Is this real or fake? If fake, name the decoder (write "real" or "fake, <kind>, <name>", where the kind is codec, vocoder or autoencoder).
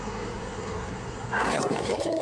fake, codec, SNAC